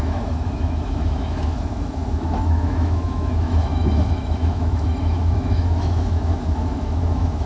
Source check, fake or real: fake